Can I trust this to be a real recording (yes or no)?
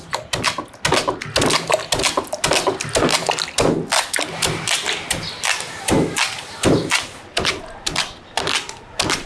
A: yes